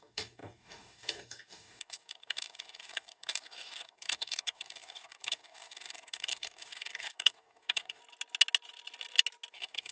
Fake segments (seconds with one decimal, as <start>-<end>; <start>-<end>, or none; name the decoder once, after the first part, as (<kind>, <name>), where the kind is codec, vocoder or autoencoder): 0.0-8.0 (codec, DAC); 9.5-9.9